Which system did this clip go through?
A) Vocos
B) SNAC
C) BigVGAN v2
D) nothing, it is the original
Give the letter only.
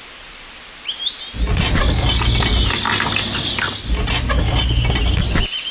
D